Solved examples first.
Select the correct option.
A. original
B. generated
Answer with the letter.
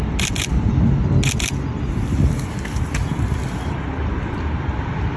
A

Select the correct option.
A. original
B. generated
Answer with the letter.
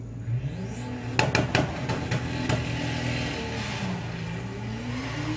A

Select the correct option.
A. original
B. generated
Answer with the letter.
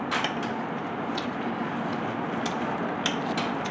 A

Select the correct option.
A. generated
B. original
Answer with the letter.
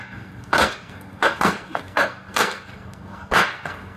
A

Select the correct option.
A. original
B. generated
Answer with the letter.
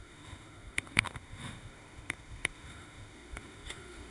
B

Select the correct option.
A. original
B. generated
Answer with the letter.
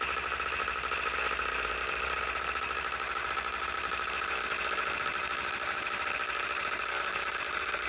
B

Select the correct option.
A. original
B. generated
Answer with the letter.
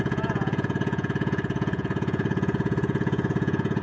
B